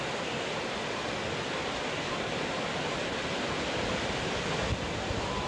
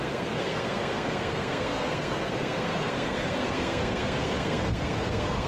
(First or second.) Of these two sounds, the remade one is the second